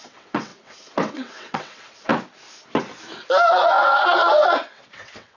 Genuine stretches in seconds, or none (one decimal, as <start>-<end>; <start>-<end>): 2.1-3.5